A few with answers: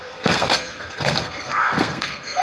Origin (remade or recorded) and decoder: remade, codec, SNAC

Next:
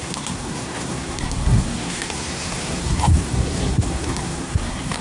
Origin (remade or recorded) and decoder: remade, codec, SNAC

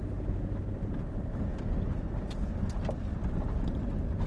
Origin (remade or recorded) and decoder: recorded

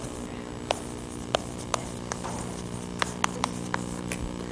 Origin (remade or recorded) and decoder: recorded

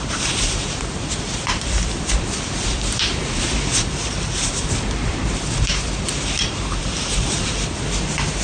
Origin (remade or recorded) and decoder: remade, vocoder, BigVGAN v2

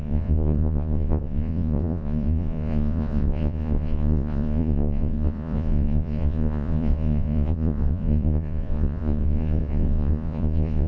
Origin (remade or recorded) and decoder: remade, vocoder, Vocos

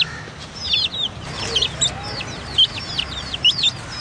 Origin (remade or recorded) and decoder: recorded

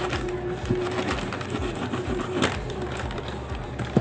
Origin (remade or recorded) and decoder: recorded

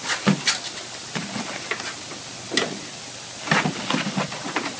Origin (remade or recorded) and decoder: recorded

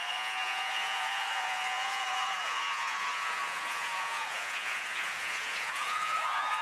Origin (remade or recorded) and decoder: remade, vocoder, Vocos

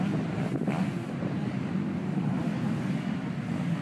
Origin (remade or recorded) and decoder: recorded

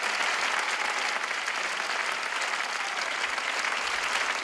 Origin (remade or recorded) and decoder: recorded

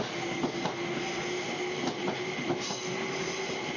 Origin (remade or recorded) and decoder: recorded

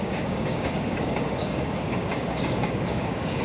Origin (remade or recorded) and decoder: remade, codec, DAC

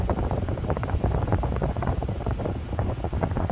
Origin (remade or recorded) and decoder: remade, vocoder, Vocos